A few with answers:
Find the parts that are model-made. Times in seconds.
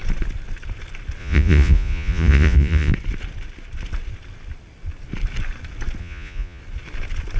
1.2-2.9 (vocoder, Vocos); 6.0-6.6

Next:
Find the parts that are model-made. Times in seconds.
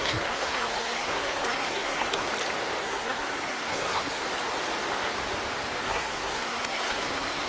0.0-2.3 (codec, SNAC); 2.8-4.2; 5.8-7.5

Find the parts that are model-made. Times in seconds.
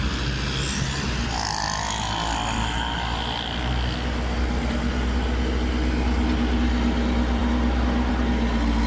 none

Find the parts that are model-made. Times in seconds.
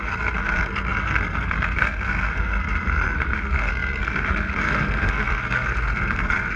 0.0-6.6 (codec, SNAC)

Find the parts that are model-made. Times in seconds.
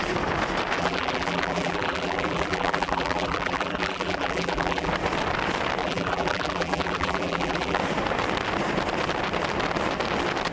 0.8-4.9 (vocoder, BigVGAN v2); 5.8-7.8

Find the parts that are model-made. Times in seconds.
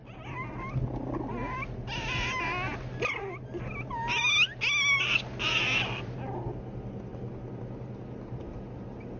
none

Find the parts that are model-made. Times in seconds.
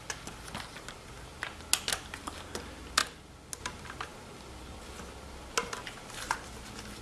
none